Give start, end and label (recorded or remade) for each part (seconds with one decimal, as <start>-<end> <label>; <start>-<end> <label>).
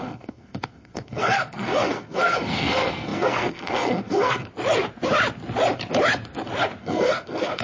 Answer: 0.0-4.5 remade; 4.5-6.8 recorded; 6.8-7.6 remade